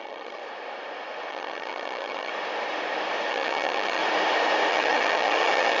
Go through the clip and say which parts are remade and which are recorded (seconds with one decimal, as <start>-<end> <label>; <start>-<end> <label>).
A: 0.0-0.4 remade; 0.4-1.3 recorded; 1.3-2.3 remade; 2.3-3.3 recorded; 3.3-4.0 remade; 4.0-4.7 recorded; 4.7-5.8 remade